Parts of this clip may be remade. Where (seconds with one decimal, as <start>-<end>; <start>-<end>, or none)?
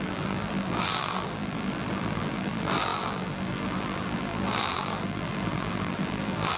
0.0-6.6